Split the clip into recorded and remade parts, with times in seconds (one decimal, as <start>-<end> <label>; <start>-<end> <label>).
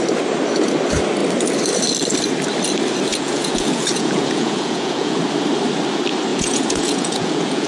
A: 0.0-3.1 recorded; 3.1-5.2 remade; 5.2-6.3 recorded; 6.3-7.7 remade